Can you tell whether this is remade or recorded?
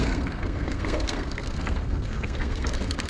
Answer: remade